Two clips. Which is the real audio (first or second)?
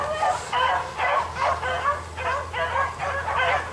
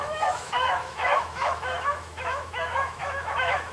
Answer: first